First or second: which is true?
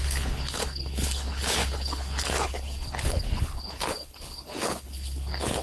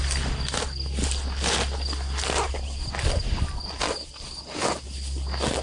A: second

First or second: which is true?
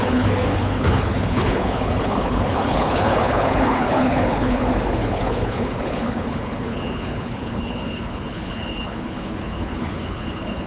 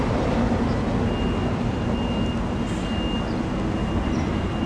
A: second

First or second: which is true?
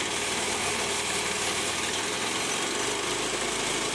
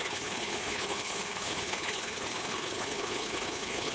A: first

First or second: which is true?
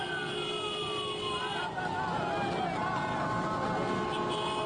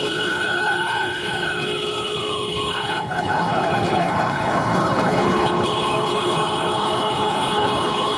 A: first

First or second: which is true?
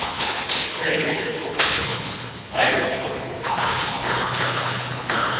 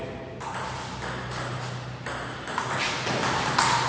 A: second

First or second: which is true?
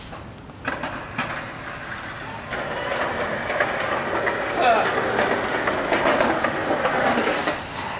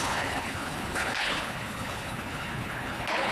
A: first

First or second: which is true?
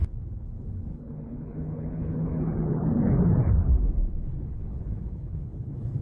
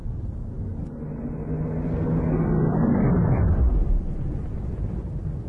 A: second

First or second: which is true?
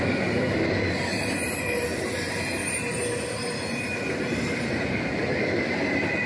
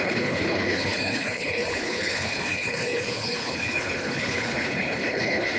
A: first